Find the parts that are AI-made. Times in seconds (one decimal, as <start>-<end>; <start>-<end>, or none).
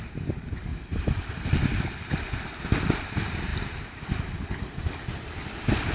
none